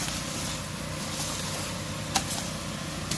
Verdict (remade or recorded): recorded